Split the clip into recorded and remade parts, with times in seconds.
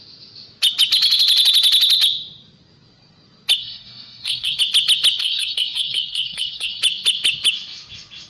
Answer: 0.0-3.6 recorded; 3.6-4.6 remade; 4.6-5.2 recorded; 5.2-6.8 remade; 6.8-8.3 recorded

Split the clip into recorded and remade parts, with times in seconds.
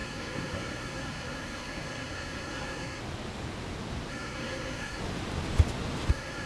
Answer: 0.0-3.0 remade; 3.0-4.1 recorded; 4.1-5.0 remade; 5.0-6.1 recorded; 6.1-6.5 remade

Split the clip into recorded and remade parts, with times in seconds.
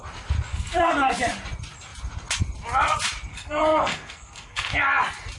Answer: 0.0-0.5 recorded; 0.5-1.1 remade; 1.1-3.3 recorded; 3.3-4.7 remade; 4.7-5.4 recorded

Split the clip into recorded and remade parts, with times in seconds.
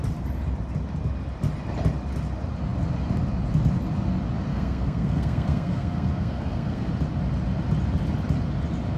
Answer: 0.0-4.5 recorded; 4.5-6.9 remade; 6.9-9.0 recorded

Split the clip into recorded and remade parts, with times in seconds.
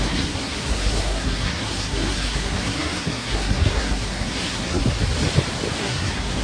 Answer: 0.0-4.8 remade; 4.8-5.8 recorded; 5.8-6.4 remade